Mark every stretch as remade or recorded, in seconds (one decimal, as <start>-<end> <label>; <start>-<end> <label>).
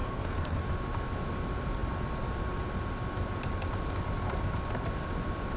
0.0-0.6 remade; 0.6-5.6 recorded